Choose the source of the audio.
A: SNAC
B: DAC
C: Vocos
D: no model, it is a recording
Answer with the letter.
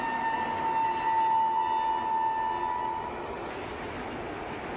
D